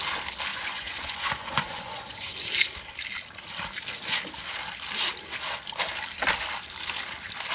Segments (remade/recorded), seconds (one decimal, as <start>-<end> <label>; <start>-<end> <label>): 0.0-0.5 recorded; 0.5-2.3 remade; 2.3-7.5 recorded